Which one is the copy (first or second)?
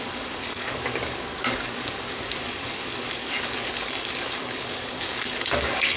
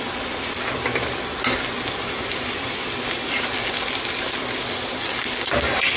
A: first